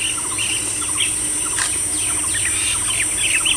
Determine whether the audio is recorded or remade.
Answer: recorded